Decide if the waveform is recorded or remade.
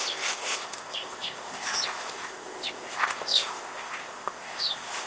remade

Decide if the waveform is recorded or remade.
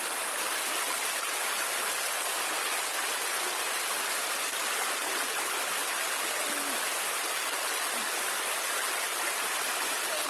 recorded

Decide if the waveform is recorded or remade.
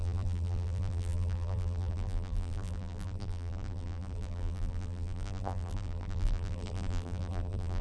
remade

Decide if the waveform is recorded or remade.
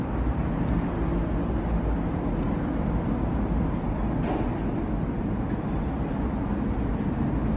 recorded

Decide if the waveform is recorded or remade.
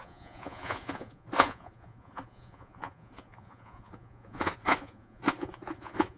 remade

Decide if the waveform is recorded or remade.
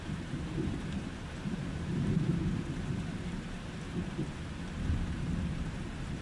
remade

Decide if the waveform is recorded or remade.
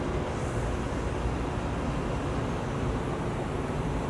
recorded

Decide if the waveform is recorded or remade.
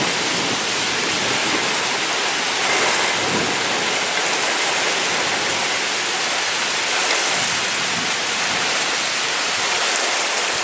recorded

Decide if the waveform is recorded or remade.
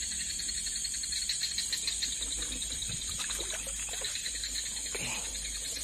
recorded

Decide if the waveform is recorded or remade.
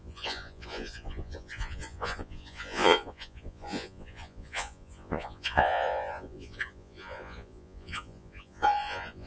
remade